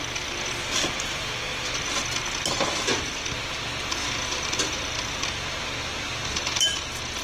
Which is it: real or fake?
real